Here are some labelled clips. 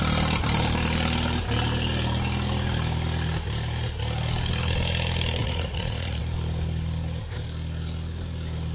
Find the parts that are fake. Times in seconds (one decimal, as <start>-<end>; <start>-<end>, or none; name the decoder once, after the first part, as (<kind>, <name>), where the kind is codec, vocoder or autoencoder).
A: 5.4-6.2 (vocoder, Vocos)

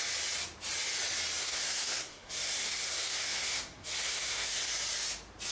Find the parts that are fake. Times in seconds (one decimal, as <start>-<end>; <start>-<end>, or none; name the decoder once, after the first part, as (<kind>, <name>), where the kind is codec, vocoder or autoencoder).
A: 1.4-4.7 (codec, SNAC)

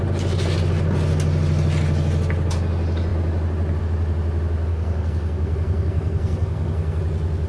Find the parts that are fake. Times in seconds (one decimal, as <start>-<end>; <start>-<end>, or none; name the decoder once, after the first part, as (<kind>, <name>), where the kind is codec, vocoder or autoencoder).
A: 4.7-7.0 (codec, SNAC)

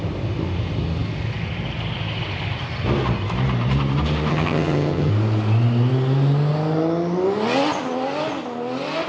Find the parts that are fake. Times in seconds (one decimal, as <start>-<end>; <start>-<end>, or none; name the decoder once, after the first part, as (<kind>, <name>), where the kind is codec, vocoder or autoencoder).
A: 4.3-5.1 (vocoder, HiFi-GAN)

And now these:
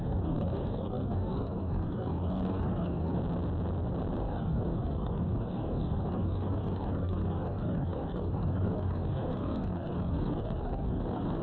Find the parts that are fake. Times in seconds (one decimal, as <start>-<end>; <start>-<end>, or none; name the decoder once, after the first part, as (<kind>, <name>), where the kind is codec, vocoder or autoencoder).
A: 0.0-3.2 (codec, DAC); 4.2-11.4

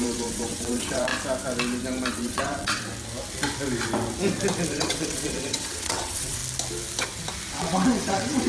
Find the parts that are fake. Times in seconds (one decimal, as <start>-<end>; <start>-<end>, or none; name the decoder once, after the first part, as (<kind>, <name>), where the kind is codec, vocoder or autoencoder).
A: 0.0-1.1 (vocoder, WaveNeXt); 2.1-2.9; 4.7-6.4; 7.5-8.5

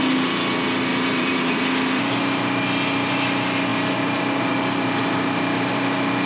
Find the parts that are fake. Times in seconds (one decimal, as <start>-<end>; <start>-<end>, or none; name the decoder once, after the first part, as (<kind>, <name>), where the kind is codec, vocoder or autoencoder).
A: 0.9-1.6 (vocoder, BigVGAN v2); 3.7-5.7

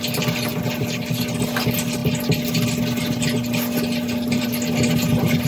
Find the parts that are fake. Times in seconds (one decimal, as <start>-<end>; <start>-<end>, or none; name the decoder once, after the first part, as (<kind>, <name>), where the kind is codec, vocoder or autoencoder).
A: none